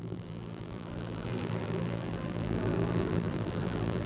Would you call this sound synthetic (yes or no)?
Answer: yes